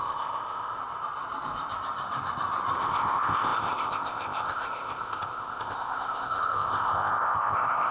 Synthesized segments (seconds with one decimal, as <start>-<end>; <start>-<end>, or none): 0.0-0.8; 2.8-7.9